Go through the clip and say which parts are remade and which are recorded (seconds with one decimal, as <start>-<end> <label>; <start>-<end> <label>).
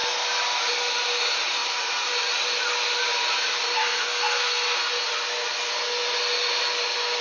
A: 0.0-3.8 recorded; 3.8-4.9 remade; 4.9-7.2 recorded